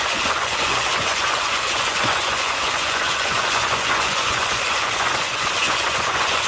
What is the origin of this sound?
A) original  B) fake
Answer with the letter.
B